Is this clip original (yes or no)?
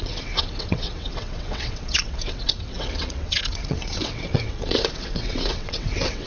no